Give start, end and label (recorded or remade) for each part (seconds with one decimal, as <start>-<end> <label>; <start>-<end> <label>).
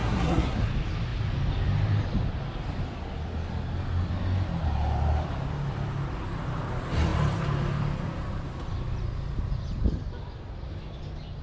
0.0-0.7 remade; 0.7-11.4 recorded